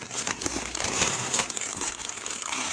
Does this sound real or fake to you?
fake